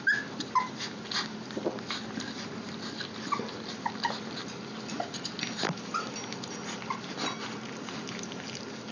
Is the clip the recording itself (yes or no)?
yes